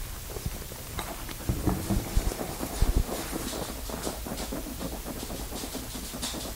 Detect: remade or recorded recorded